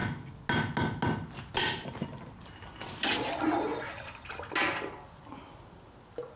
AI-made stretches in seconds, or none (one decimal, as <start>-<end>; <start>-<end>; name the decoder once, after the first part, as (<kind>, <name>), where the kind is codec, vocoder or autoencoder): none